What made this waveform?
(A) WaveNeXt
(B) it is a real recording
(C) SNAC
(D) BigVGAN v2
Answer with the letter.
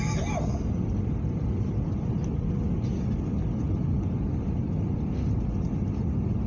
B